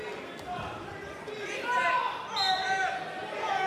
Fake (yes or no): no